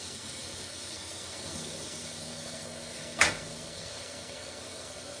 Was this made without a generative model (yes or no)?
no